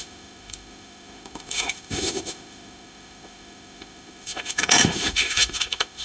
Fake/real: fake